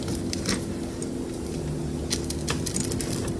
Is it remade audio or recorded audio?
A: recorded